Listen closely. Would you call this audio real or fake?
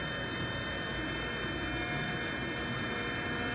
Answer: real